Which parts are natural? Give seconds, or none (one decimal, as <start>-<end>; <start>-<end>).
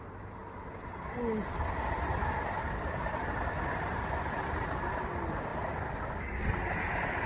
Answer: 0.0-7.3